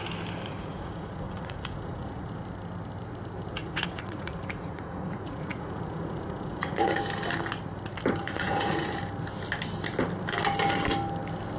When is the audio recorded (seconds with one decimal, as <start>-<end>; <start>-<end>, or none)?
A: 0.0-0.5; 2.3-3.6; 7.0-8.2; 9.0-11.6